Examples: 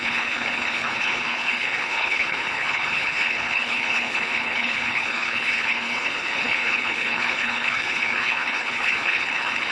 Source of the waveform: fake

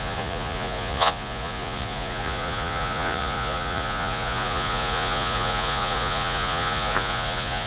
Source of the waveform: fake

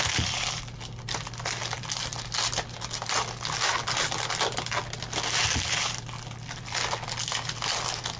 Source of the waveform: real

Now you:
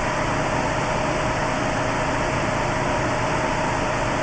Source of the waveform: real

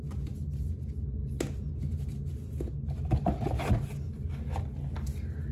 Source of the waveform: real